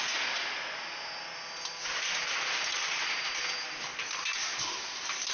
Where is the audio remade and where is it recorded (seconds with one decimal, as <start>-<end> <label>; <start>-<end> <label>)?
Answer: 0.0-1.8 recorded; 1.8-2.3 remade; 2.3-2.7 recorded; 2.7-3.9 remade; 3.9-5.3 recorded